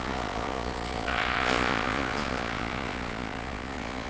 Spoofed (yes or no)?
yes